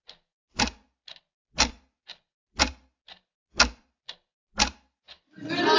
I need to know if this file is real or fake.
real